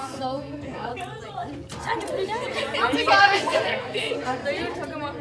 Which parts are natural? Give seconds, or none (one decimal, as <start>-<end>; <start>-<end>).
0.9-3.2; 4.4-5.2